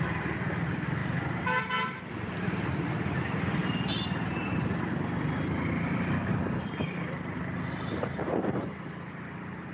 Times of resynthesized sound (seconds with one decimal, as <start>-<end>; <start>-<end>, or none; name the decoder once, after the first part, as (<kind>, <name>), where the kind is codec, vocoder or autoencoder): none